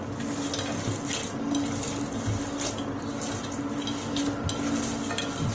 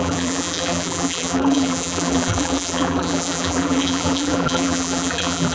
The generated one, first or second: second